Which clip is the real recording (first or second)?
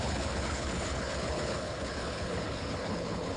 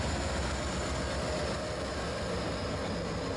second